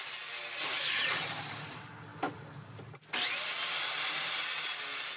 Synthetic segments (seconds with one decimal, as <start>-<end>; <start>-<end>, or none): none